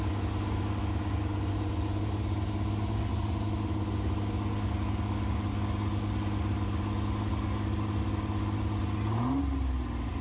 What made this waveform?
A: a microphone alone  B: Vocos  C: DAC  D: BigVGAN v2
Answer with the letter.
A